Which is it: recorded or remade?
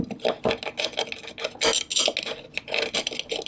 recorded